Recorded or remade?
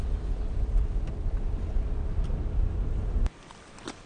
remade